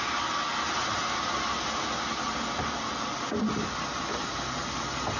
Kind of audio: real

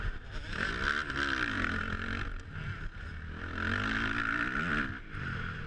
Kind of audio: real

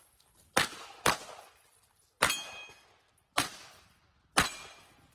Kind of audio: real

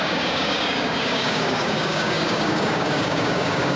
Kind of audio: fake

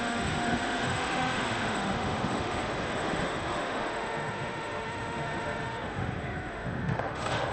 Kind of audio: fake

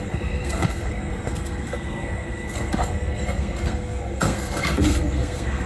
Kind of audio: fake